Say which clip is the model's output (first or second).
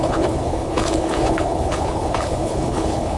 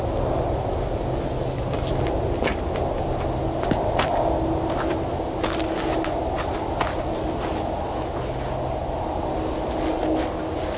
first